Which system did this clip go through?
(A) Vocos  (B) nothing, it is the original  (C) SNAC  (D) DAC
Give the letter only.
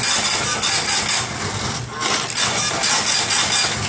B